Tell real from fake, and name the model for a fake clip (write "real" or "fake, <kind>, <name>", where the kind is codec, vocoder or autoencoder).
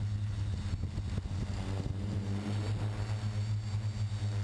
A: real